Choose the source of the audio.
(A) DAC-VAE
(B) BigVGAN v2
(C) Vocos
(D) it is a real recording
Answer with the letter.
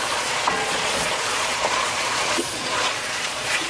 C